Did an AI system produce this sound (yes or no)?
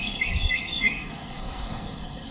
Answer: yes